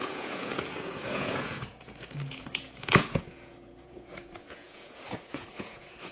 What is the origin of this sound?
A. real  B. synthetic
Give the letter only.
B